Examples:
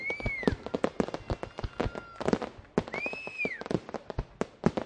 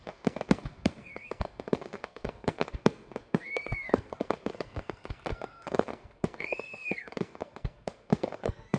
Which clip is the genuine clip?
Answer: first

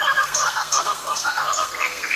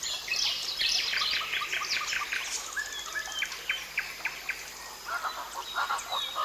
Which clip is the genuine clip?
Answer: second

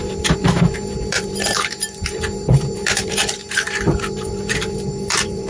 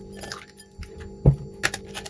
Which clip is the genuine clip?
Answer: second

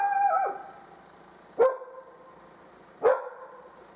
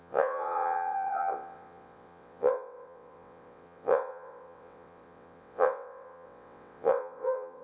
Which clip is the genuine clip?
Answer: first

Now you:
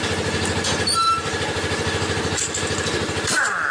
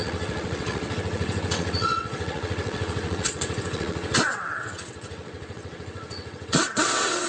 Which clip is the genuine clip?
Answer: first